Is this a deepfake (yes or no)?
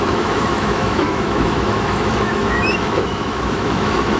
yes